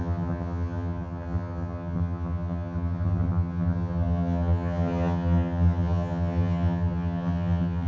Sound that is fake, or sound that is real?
fake